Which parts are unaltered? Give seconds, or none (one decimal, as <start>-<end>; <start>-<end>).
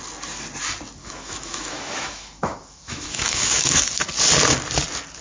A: 0.0-1.0; 4.0-5.2